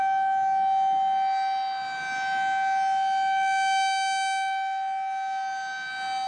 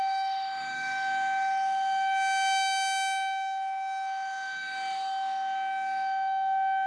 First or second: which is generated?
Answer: second